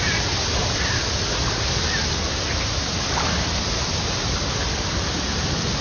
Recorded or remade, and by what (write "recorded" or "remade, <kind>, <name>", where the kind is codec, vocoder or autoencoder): recorded